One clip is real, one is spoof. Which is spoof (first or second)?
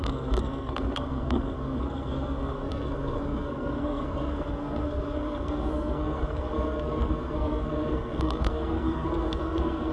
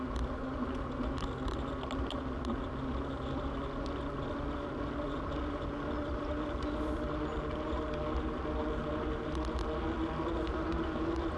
first